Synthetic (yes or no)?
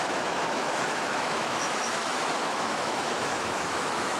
yes